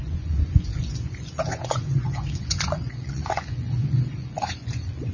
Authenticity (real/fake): fake